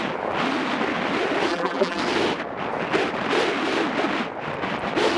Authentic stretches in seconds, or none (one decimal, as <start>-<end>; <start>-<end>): 0.0-1.5; 2.0-5.2